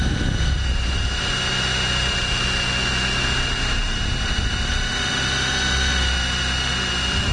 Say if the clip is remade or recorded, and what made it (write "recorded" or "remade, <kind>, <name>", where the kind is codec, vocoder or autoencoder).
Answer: recorded